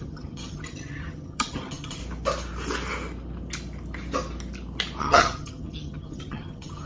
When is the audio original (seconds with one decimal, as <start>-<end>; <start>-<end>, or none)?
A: 2.0-5.0